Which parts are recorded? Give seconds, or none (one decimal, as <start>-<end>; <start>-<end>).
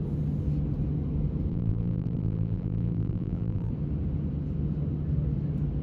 0.0-1.5; 3.7-5.8